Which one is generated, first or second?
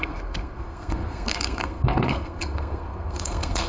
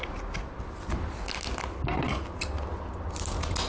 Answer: first